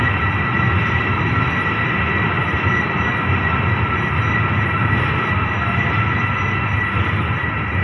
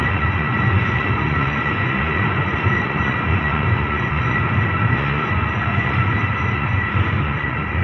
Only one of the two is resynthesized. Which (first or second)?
second